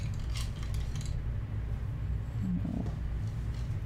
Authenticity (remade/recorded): recorded